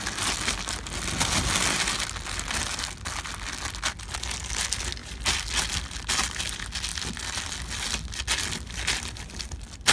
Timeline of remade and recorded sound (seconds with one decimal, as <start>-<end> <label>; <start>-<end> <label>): 0.0-9.9 recorded